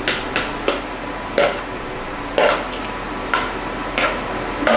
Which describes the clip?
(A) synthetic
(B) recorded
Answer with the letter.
B